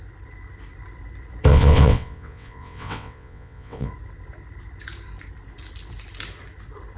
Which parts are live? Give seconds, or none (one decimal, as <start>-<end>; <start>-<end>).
0.0-1.5; 3.9-7.0